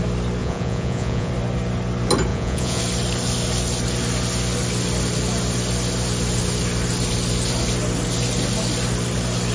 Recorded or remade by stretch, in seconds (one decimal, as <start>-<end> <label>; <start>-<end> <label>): 0.0-0.4 recorded; 0.4-1.3 remade; 1.3-2.3 recorded; 2.3-2.8 remade; 2.8-9.5 recorded

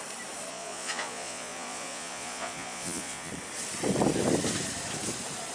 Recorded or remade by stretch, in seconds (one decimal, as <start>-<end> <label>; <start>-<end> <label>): 0.0-0.5 recorded; 0.5-3.3 remade; 3.3-5.5 recorded

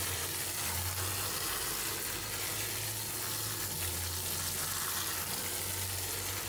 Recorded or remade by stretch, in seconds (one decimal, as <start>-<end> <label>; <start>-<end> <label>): 0.0-6.5 recorded

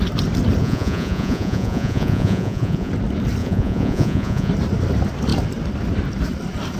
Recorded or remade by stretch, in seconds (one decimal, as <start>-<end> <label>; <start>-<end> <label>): 0.0-0.6 recorded; 0.6-2.9 remade; 2.9-3.4 recorded; 3.4-4.5 remade; 4.5-6.8 recorded